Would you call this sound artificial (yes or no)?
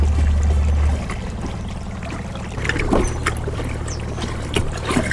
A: no